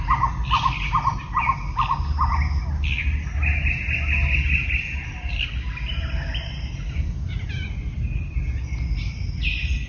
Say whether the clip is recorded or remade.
recorded